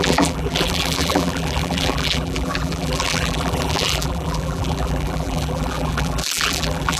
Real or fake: fake